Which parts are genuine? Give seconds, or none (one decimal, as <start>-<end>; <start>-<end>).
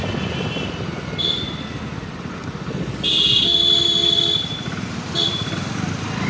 0.0-6.3